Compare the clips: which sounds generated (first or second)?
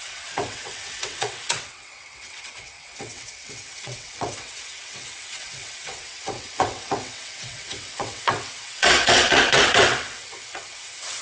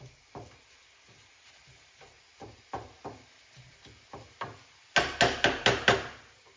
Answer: first